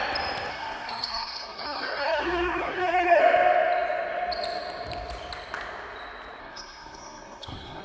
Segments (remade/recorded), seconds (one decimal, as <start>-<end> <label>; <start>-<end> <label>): 0.0-0.5 recorded; 0.5-3.2 remade; 3.2-6.4 recorded; 6.4-7.8 remade